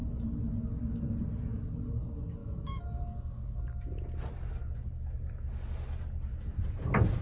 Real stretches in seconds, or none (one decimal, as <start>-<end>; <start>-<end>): 0.0-2.4; 3.0-7.2